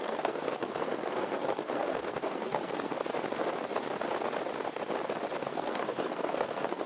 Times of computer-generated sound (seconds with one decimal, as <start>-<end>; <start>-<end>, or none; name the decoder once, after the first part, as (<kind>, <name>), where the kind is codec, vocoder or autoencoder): 0.0-2.9 (codec, SNAC); 5.4-6.9